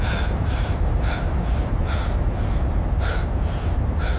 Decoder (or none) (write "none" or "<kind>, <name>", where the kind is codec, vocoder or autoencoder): none